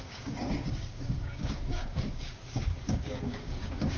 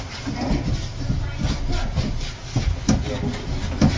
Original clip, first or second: second